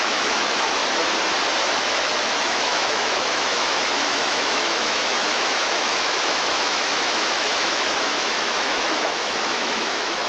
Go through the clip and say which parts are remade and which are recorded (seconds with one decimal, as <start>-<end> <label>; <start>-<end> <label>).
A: 0.0-0.8 remade; 0.8-1.7 recorded; 1.7-10.3 remade